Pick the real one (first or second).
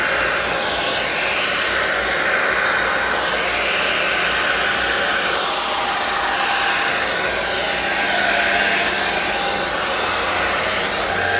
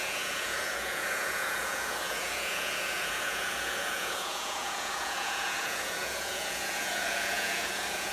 first